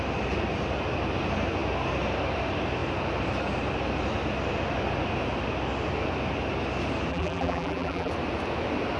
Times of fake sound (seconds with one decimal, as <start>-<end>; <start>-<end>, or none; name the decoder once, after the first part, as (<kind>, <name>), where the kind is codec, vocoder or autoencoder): 7.1-8.1 (vocoder, BigVGAN v2)